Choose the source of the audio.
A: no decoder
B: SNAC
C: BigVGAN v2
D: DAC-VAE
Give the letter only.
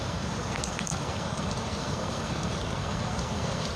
B